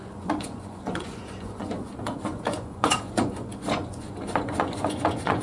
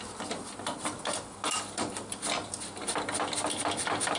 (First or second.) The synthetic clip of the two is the first